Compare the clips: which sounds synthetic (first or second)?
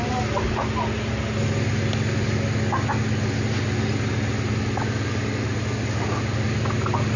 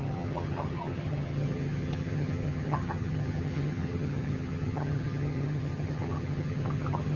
second